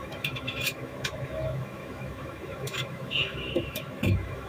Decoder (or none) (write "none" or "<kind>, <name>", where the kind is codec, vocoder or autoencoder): autoencoder, DAC-VAE